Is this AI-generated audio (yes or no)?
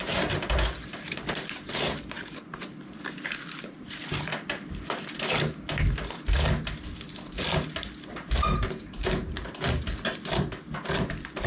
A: no